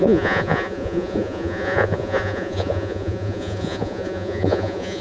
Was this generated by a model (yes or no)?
yes